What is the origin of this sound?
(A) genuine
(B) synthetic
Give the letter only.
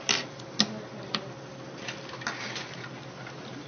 A